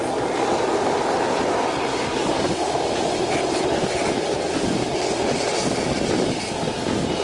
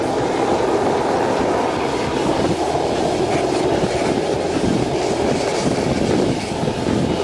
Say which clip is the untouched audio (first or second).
first